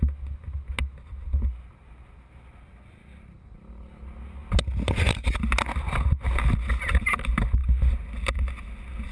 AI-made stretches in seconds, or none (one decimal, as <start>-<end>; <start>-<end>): none